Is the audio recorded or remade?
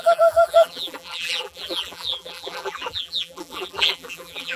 remade